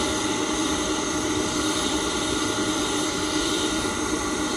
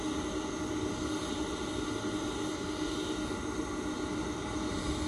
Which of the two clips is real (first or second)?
second